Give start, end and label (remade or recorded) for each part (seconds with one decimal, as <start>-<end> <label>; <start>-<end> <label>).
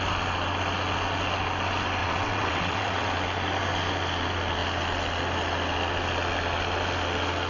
0.0-2.0 recorded; 2.0-3.1 remade; 3.1-7.5 recorded